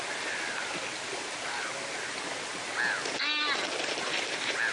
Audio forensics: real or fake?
real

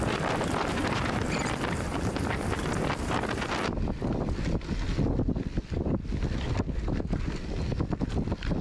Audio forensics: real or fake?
real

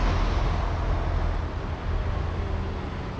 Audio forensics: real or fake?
real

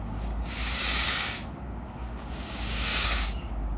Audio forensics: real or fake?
fake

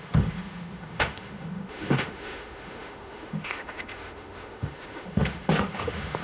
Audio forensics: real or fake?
fake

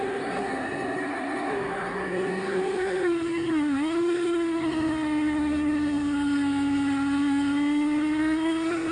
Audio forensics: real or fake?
fake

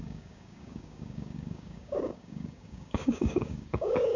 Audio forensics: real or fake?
fake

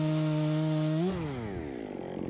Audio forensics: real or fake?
real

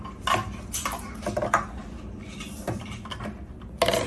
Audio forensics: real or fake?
real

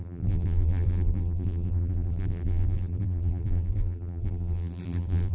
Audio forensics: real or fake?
fake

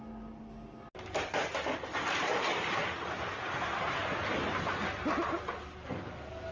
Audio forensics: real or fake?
real